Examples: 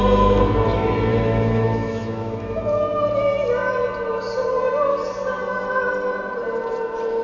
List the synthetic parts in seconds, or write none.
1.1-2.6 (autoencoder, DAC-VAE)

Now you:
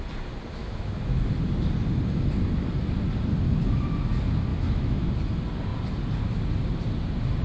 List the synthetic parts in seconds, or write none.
0.6-1.2 (autoencoder, DAC-VAE); 4.5-5.1

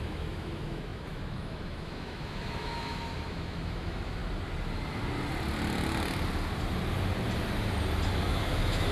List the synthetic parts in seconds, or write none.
0.0-4.2 (autoencoder, DAC-VAE); 8.3-8.9

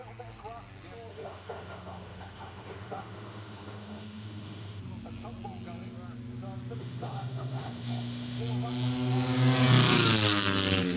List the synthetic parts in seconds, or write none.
1.1-4.8 (autoencoder, DAC-VAE); 6.8-8.4